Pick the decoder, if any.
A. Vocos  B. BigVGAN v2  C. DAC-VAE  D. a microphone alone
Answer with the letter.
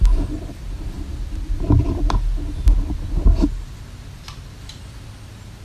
D